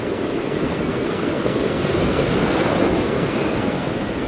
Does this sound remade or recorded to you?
remade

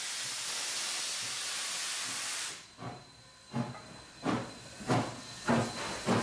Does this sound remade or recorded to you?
recorded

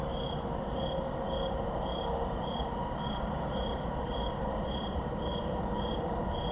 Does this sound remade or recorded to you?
recorded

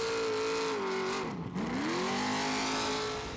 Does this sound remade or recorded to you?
recorded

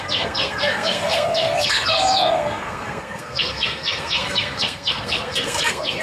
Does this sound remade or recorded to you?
remade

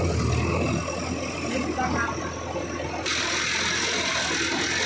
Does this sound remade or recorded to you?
recorded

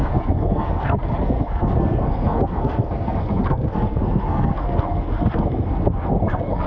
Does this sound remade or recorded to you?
remade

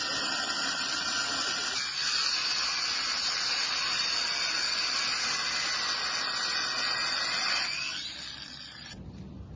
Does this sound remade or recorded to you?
recorded